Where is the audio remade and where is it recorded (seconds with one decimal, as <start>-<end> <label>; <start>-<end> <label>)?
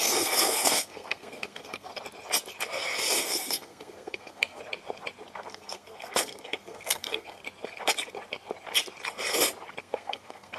0.0-1.9 remade; 1.9-3.2 recorded; 3.2-4.6 remade; 4.6-5.5 recorded; 5.5-7.4 remade; 7.4-9.8 recorded; 9.8-10.6 remade